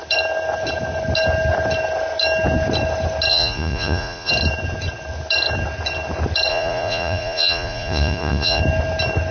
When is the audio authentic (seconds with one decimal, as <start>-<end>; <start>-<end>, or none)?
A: 0.0-3.3; 4.3-6.5; 8.6-9.3